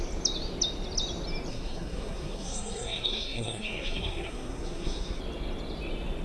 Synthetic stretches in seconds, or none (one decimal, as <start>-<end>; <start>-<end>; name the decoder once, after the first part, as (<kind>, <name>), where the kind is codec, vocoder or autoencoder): 1.5-5.2 (codec, SNAC)